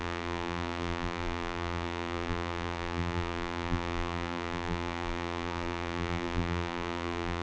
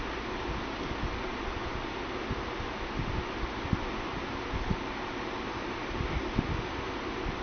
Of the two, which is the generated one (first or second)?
first